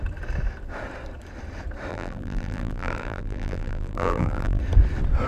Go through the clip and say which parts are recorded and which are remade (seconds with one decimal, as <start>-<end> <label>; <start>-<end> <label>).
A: 0.0-1.9 recorded; 1.9-4.6 remade; 4.6-5.3 recorded